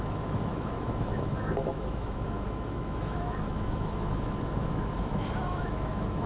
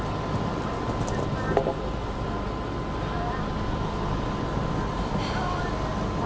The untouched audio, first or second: second